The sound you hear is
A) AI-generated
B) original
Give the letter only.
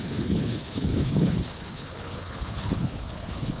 A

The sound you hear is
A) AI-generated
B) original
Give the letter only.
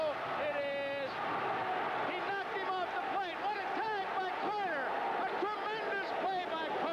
B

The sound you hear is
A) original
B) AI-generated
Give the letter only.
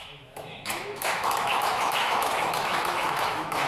B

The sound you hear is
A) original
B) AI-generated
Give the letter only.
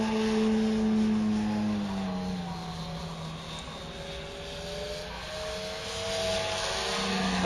A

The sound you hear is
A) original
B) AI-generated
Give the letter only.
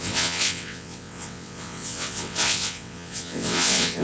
B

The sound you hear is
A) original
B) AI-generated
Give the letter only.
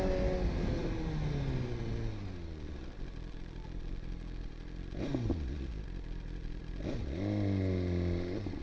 A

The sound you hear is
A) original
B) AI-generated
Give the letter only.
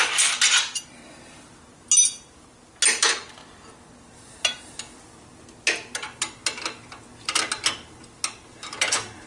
A